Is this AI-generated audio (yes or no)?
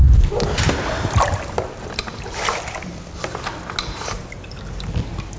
no